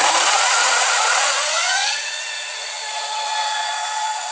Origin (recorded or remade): remade